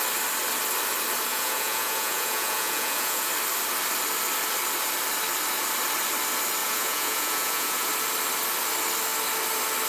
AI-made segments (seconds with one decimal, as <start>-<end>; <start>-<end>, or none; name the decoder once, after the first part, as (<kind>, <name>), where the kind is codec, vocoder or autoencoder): 1.3-3.3 (vocoder, Vocos); 6.6-7.9